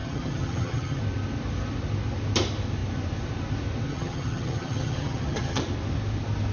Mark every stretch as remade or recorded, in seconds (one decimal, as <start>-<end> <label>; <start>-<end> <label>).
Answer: 0.0-1.0 remade; 1.0-3.9 recorded; 3.9-5.6 remade; 5.6-6.5 recorded